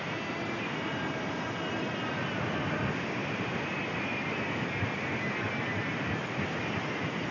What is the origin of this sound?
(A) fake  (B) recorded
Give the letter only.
B